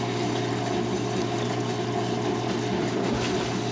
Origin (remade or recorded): recorded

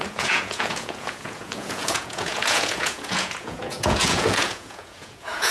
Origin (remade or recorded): remade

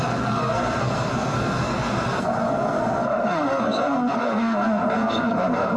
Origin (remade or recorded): remade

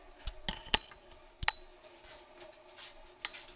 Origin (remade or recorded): recorded